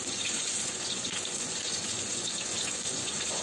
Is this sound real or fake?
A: fake